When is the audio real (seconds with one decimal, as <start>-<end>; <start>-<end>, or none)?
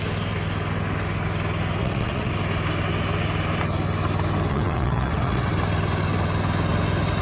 0.0-1.8; 2.3-4.5; 5.5-7.2